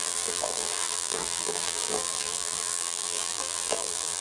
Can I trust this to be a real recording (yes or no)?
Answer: no